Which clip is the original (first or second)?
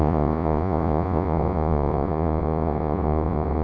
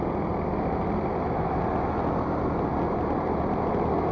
second